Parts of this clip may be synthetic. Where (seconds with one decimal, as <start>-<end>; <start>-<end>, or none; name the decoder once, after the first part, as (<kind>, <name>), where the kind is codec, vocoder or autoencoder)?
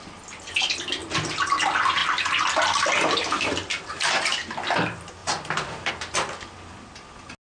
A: 2.0-3.9 (vocoder, BigVGAN v2); 5.2-5.9